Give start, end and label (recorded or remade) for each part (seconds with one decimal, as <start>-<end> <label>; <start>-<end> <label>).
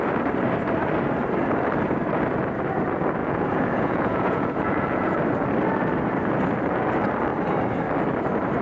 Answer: 0.0-3.2 recorded; 3.2-5.2 remade; 5.2-8.6 recorded